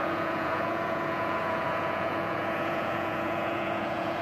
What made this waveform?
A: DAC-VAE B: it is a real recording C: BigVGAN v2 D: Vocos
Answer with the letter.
D